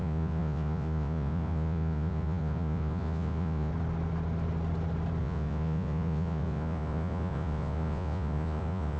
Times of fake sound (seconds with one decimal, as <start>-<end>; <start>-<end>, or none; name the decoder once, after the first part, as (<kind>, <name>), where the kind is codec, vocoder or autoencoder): 0.0-3.7 (vocoder, Vocos); 5.2-9.0